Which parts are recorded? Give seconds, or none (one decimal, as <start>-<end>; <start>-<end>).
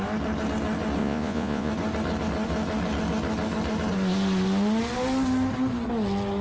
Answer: 0.0-1.0; 1.7-6.4